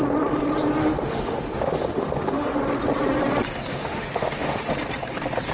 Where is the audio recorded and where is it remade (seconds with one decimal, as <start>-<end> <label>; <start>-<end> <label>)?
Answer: 0.0-0.8 recorded; 0.8-2.6 remade; 2.6-3.7 recorded; 3.7-4.7 remade; 4.7-5.5 recorded